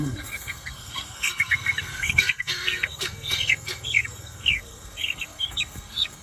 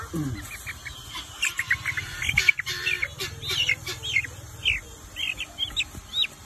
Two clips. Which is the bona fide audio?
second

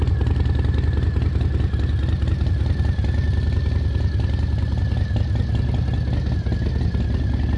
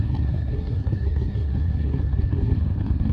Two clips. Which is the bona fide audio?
first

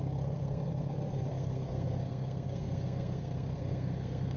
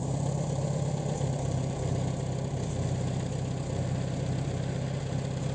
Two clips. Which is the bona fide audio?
second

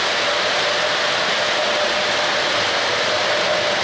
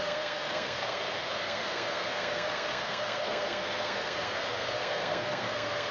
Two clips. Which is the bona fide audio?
first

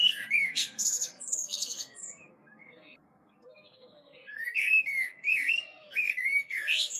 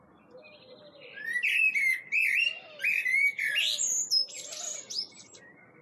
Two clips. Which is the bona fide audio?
second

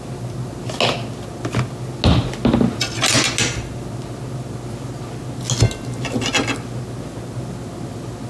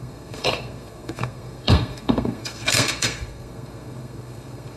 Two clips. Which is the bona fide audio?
first